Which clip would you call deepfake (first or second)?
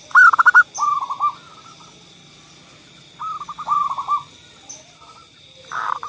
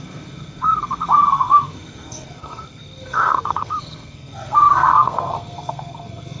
second